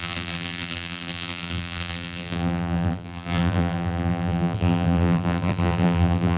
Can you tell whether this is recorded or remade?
remade